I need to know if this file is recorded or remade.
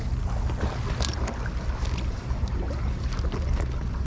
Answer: recorded